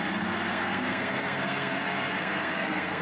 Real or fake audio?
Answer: fake